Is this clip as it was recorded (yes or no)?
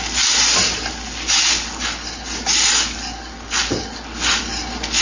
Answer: yes